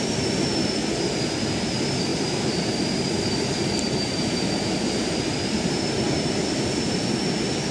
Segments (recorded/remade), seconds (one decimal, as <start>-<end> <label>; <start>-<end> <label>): 0.0-2.1 recorded; 2.1-3.9 remade; 3.9-7.7 recorded